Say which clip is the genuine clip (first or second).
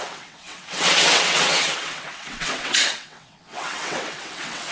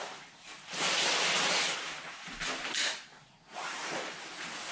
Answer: second